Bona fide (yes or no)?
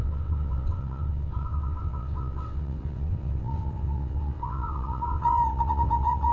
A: no